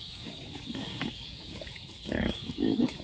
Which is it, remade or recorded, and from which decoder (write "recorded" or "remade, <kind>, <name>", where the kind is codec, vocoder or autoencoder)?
remade, codec, DAC